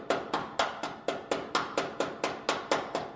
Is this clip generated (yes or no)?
no